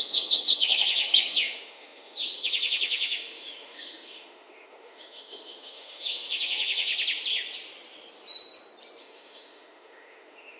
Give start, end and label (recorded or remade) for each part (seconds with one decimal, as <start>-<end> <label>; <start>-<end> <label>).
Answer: 0.0-6.9 remade; 6.9-9.0 recorded; 9.0-10.6 remade